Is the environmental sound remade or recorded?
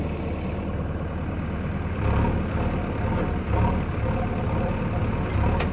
recorded